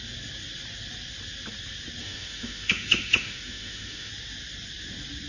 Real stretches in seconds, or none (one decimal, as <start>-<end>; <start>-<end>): 0.0-2.0; 4.1-5.3